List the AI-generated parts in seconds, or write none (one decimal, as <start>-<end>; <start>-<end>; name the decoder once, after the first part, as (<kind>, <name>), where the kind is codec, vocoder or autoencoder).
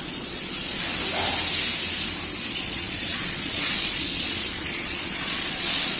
0.0-0.9 (vocoder, Vocos); 2.5-6.0